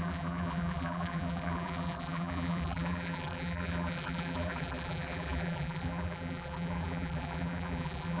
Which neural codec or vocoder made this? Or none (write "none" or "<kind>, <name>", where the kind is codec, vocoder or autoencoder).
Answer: vocoder, BigVGAN v2